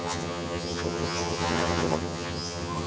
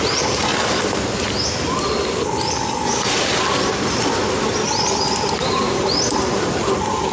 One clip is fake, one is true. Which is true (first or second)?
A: second